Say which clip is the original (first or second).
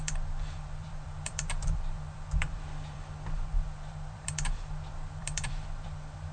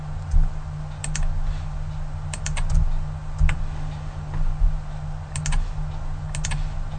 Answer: second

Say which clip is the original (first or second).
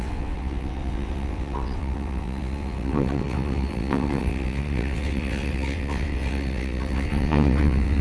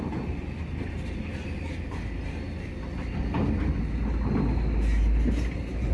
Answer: second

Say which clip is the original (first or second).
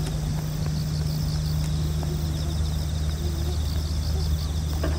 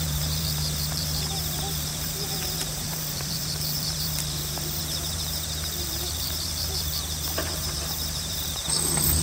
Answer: first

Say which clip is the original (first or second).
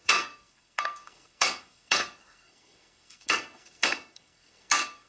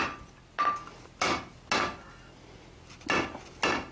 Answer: second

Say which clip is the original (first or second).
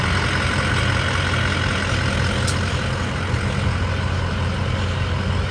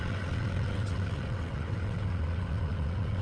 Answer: first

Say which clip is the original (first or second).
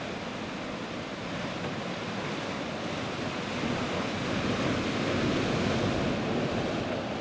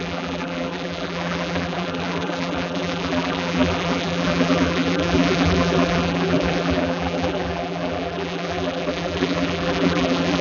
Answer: first